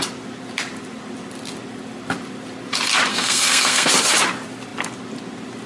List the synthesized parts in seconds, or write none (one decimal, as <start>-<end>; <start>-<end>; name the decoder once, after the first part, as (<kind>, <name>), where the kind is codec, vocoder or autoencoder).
3.1-3.9 (codec, SNAC)